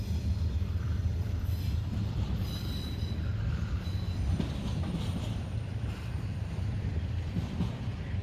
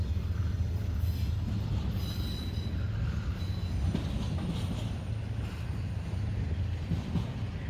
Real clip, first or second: second